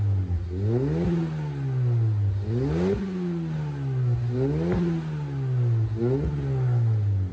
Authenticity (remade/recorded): recorded